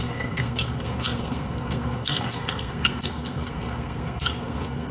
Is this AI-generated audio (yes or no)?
yes